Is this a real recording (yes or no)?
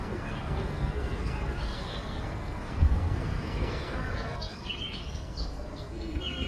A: no